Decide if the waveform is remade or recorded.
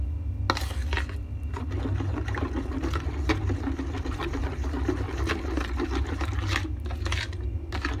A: recorded